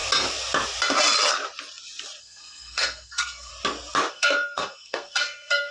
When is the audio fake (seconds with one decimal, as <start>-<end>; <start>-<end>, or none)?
2.2-3.5; 4.1-5.7